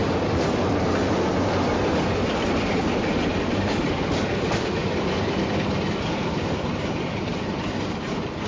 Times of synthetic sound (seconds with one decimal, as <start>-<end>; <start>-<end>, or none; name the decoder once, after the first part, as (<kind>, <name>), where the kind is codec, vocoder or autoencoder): 0.0-8.5 (vocoder, BigVGAN v2)